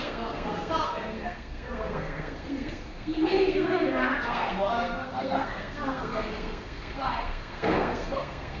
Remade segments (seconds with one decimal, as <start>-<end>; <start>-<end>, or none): 0.0-8.6